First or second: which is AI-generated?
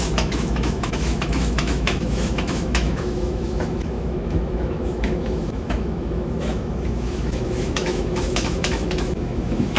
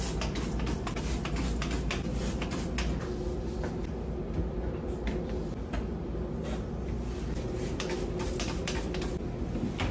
first